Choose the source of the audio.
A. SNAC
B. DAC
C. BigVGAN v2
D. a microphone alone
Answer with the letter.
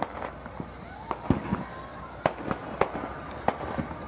D